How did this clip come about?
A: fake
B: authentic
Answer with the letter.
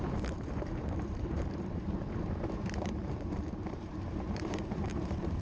A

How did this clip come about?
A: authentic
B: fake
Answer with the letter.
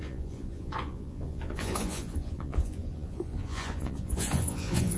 B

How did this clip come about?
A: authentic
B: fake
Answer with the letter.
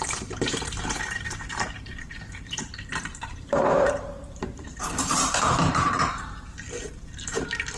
B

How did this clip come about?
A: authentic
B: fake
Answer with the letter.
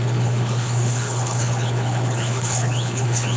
B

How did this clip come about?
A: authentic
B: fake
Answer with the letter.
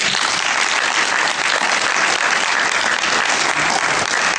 A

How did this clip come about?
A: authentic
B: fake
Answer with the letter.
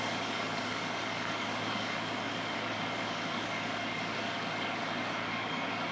B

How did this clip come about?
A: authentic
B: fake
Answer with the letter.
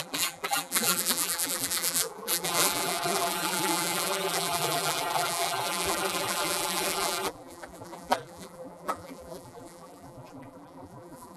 B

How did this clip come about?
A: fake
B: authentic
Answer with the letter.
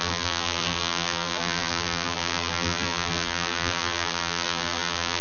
A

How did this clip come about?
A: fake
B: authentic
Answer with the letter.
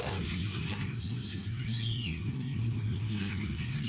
A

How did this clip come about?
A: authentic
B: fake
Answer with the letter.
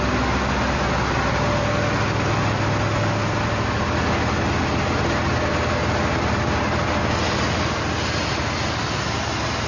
A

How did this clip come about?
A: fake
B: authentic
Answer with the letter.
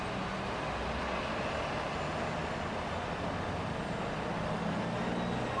B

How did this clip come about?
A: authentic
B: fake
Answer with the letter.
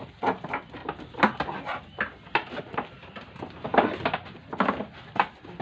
A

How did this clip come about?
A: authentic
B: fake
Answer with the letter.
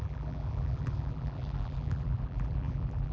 B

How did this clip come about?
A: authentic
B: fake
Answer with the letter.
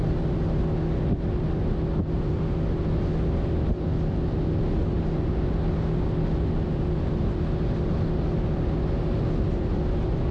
A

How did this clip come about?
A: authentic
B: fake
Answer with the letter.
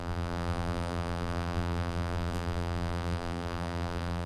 B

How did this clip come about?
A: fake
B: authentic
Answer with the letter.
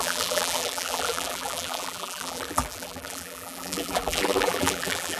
A